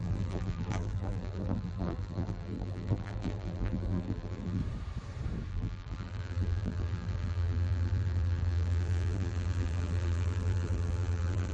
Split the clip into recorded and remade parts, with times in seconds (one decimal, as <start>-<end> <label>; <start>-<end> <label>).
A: 0.0-4.6 remade; 4.6-5.5 recorded; 5.5-11.5 remade